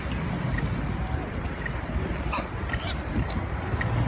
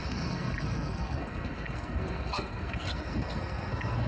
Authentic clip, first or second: first